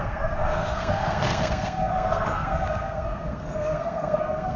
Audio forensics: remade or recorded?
remade